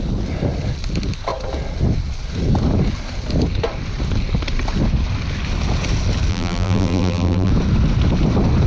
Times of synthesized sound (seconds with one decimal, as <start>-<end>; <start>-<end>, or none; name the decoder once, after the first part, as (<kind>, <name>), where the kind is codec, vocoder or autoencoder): 6.3-7.5 (vocoder, BigVGAN v2)